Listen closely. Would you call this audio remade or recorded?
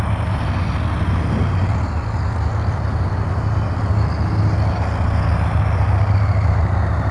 recorded